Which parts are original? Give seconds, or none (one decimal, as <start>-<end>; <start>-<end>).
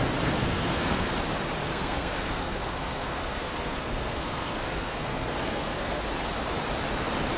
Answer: 0.0-0.4; 1.1-1.6; 6.0-7.4